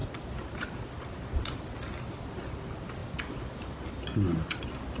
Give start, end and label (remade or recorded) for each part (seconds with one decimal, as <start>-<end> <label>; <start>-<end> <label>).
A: 0.0-0.9 remade; 0.9-3.0 recorded; 3.0-3.9 remade; 3.9-5.0 recorded